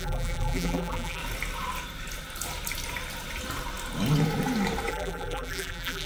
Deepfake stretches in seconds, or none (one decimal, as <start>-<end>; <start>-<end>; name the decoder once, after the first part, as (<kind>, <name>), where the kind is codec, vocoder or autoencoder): 0.0-1.2 (vocoder, BigVGAN v2); 4.9-6.1